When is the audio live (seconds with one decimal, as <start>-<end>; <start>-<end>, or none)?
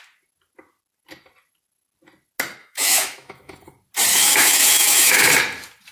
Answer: 0.0-2.6; 3.5-4.1; 5.3-5.9